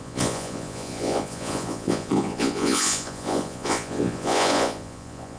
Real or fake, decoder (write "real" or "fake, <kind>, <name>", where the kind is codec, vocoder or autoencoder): fake, vocoder, Vocos